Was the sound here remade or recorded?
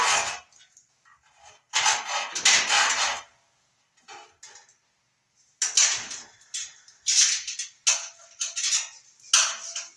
recorded